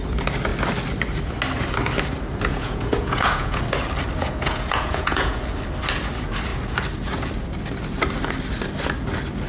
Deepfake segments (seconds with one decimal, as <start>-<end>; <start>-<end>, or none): 2.5-3.6; 4.2-5.4